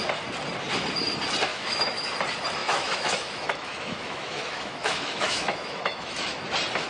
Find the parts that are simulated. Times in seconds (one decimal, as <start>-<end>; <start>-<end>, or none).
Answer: 1.5-2.1; 2.6-6.4